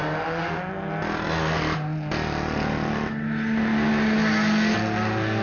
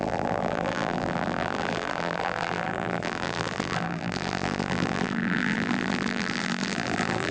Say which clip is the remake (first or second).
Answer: second